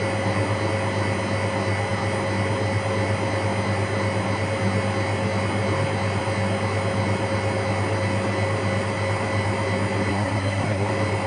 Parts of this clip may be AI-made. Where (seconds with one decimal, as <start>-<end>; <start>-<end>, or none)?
10.1-10.9